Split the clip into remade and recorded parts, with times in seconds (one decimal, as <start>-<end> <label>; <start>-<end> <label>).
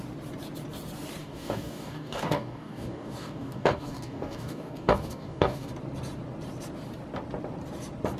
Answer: 0.0-1.2 recorded; 1.2-5.7 remade; 5.7-8.2 recorded